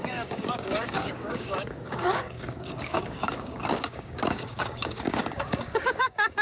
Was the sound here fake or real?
fake